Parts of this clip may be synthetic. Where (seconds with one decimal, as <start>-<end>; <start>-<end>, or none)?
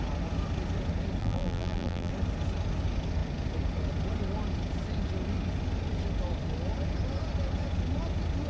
1.2-2.1